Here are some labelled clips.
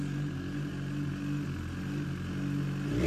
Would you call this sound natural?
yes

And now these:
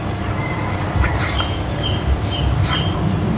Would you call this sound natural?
yes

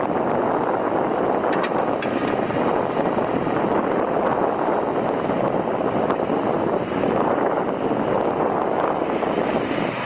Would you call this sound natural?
yes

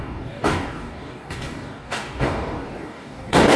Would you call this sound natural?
no